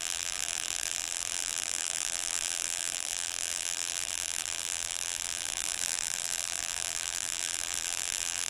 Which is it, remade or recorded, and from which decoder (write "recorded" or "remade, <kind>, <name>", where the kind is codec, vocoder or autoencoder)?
remade, vocoder, BigVGAN v2